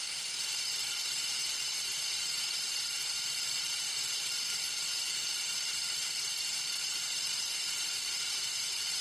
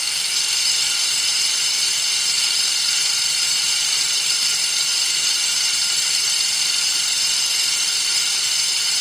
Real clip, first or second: second